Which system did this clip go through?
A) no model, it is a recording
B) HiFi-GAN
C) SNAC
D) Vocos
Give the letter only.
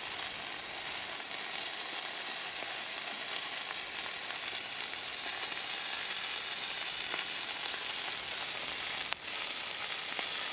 A